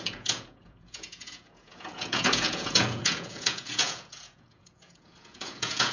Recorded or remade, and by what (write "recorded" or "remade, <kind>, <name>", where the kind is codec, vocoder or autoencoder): remade, vocoder, Vocos